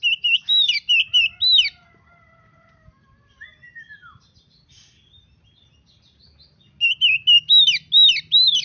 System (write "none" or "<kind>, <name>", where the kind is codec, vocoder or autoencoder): none